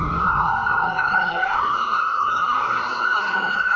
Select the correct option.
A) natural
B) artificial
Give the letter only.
B